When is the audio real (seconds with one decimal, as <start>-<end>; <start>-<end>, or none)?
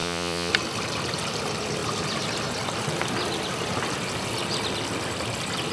0.5-5.7